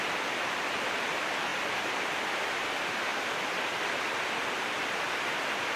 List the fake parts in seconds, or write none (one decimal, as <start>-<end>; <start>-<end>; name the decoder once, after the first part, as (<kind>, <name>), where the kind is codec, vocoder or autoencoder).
none